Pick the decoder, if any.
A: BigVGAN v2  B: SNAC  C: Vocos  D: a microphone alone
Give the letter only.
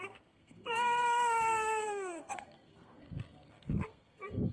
B